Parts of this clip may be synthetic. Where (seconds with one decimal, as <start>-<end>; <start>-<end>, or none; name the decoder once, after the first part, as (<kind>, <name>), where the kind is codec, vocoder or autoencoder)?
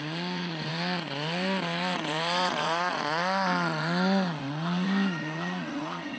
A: 0.0-6.2 (vocoder, Vocos)